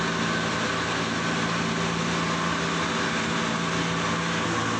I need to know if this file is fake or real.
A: real